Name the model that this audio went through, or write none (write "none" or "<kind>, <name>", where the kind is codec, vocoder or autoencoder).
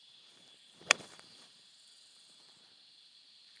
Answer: vocoder, BigVGAN v2